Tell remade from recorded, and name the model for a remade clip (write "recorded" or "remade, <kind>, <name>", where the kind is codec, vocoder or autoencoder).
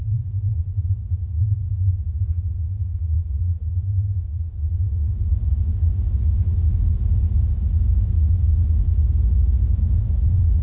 recorded